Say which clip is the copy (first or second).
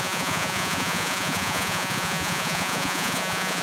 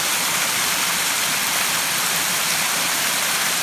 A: first